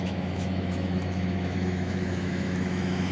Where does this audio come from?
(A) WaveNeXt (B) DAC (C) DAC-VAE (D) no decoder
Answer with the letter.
C